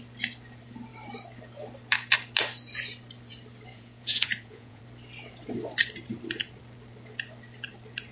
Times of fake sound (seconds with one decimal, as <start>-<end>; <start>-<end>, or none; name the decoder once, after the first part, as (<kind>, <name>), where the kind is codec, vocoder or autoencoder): 3.7-4.8 (vocoder, Vocos)